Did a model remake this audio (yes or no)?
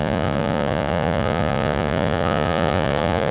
yes